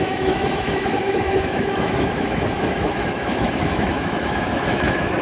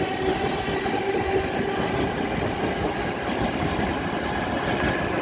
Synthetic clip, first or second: first